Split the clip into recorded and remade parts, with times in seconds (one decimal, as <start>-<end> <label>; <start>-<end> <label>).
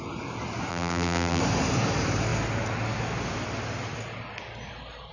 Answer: 0.0-0.7 recorded; 0.7-1.4 remade; 1.4-5.1 recorded